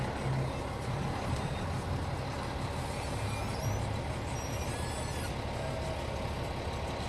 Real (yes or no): yes